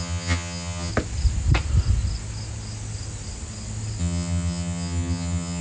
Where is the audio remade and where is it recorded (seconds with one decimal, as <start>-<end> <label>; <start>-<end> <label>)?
0.0-0.9 remade; 0.9-4.0 recorded; 4.0-5.6 remade